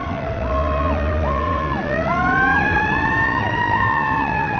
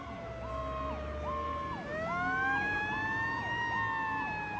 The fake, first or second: first